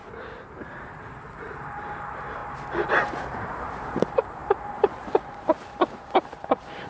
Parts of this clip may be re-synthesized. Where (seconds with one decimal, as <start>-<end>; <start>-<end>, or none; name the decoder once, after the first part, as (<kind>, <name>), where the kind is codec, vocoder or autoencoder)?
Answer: 0.0-2.4 (vocoder, BigVGAN v2); 3.2-6.9